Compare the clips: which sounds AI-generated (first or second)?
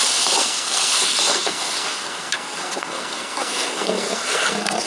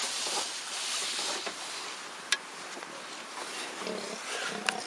first